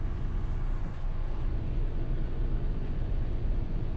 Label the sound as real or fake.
fake